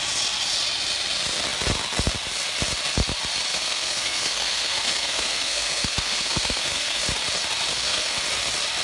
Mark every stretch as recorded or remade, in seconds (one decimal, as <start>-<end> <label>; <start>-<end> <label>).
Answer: 0.0-3.5 recorded; 3.5-7.0 remade; 7.0-7.7 recorded; 7.7-8.2 remade; 8.2-8.8 recorded